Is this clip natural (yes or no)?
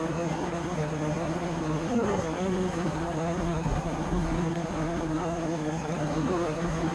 no